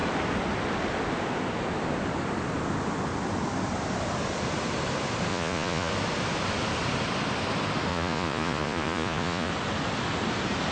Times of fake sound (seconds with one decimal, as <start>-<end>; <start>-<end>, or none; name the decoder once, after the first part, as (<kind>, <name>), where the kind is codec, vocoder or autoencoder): 5.3-5.9 (vocoder, Vocos); 7.9-9.5